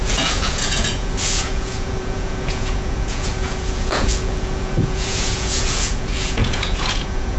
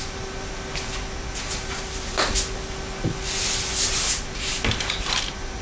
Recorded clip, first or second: second